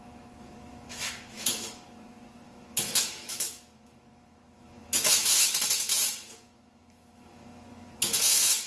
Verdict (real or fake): fake